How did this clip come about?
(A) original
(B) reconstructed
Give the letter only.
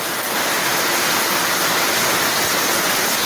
A